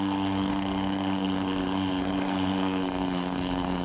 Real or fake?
fake